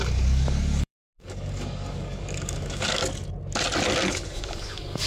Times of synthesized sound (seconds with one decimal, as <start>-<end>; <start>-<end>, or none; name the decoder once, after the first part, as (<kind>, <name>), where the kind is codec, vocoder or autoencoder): 0.0-3.0 (codec, DAC); 4.1-5.1